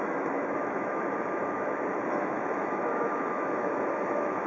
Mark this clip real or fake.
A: fake